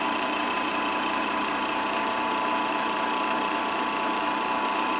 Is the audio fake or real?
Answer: fake